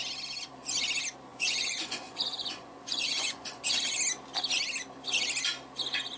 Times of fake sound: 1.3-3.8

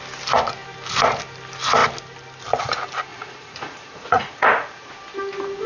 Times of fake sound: 3.1-4.9